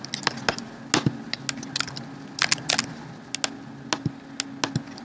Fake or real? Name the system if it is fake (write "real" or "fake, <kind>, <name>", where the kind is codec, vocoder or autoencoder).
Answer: real